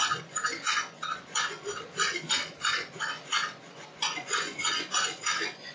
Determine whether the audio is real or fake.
fake